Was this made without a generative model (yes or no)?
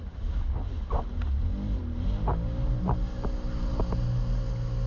yes